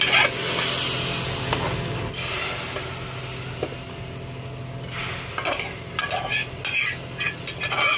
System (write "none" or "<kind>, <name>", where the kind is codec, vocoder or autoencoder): none